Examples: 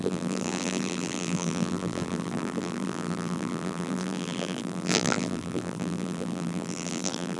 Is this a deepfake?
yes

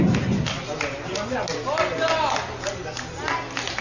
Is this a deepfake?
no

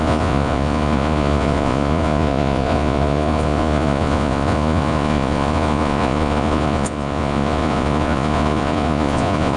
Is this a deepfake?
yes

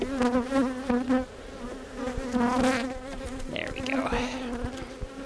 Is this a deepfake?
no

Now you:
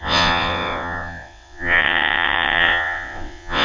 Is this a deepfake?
yes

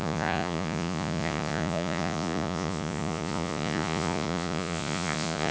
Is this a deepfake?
yes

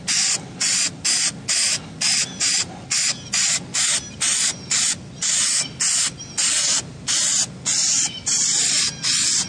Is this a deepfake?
no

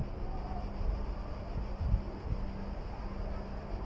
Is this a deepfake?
no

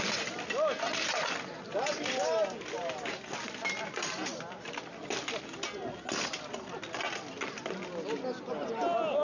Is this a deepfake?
no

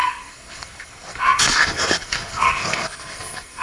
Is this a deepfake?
yes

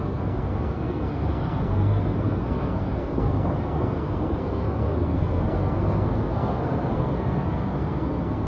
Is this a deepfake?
yes